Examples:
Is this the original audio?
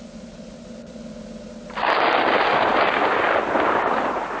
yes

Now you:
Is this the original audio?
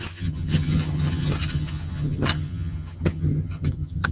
no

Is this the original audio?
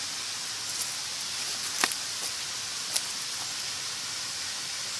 yes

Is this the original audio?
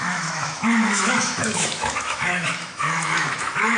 no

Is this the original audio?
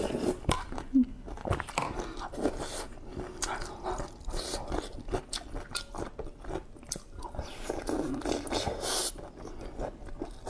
yes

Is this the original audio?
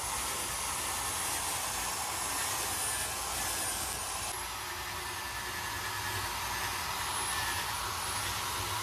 yes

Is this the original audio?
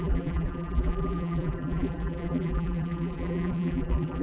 no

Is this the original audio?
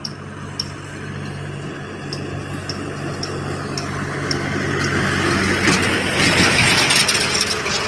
yes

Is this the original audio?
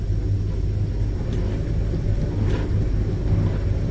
yes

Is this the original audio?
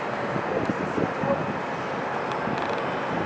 yes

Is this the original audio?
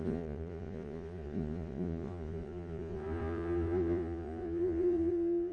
no